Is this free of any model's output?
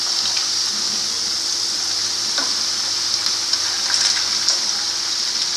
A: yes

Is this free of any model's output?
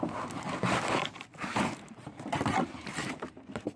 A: no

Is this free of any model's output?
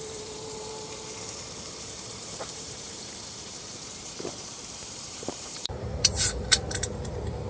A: no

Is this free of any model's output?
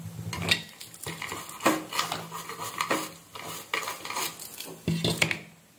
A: yes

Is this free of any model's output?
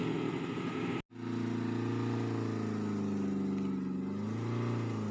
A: yes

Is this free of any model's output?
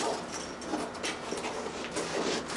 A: yes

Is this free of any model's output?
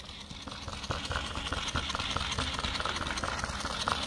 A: yes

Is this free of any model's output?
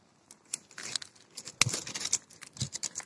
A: yes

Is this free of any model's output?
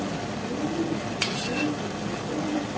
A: yes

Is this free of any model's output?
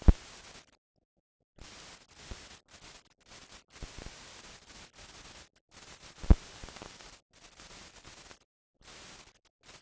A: yes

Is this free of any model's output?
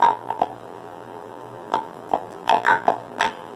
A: no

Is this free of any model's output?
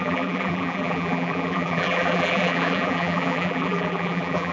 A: no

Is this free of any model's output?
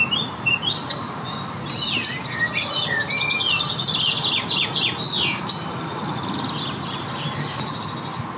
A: yes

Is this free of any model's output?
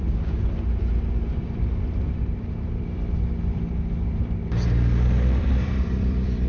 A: no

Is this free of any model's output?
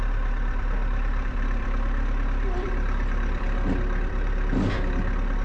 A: no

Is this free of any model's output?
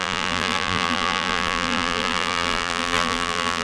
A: no